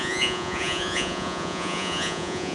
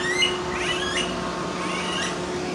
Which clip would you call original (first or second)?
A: second